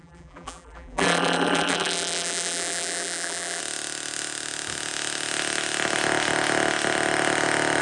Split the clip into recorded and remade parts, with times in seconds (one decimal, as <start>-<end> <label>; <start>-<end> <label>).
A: 0.0-3.6 remade; 3.6-7.8 recorded